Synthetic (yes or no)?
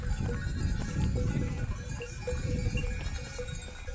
no